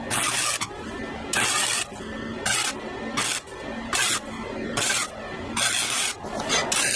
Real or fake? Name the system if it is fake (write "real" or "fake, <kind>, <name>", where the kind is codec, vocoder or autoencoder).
real